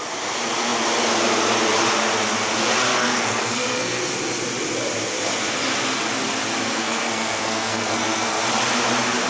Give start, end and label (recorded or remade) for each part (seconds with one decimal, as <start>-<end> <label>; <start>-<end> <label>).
0.0-2.9 recorded; 2.9-4.1 remade; 4.1-6.7 recorded; 6.7-8.4 remade; 8.4-9.3 recorded

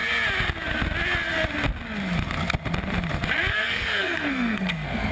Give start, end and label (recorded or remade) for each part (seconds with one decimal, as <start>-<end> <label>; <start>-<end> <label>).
0.0-3.5 recorded; 3.5-5.1 remade

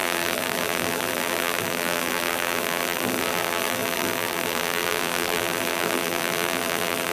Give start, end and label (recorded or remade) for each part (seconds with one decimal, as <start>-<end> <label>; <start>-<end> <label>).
0.0-7.1 remade